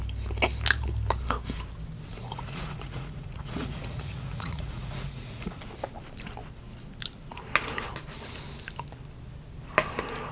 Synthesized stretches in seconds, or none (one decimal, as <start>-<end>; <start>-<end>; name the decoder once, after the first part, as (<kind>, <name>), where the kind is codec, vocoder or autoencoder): 2.1-5.6 (vocoder, Vocos)